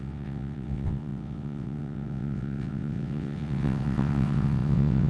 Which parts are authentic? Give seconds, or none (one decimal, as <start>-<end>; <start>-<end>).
none